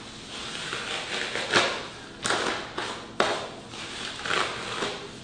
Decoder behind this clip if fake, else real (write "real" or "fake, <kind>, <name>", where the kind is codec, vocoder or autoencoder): real